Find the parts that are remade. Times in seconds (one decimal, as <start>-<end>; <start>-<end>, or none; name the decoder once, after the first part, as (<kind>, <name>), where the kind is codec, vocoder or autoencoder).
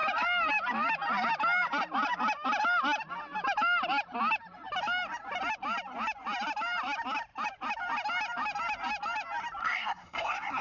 9.6-10.6 (codec, SNAC)